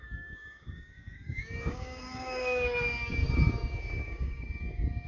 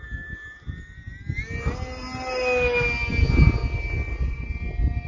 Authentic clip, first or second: second